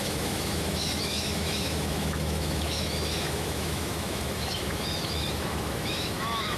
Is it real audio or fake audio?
fake